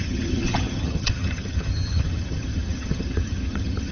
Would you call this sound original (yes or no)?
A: no